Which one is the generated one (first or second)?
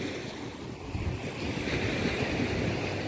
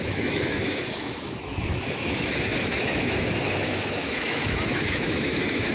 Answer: second